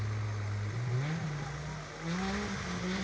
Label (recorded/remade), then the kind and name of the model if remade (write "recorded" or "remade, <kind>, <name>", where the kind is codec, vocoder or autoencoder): recorded